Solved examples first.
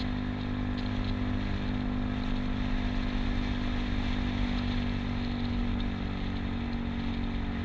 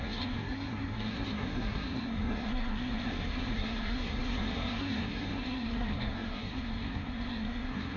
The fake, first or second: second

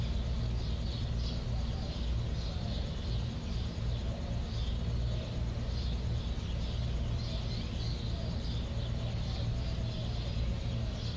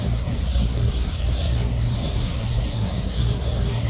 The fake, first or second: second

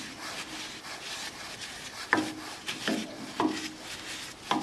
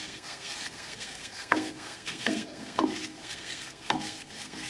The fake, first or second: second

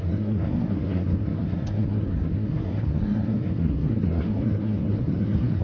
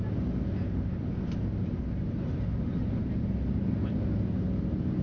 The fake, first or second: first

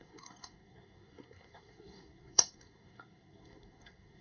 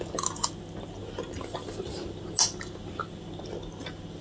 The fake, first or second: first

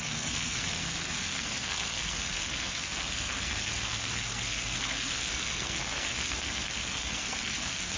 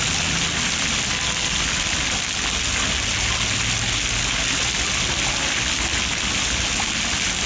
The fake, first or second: first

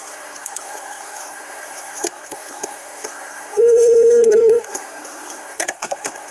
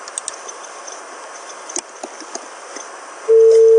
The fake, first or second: first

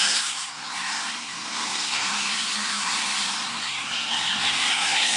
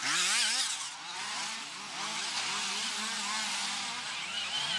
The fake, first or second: first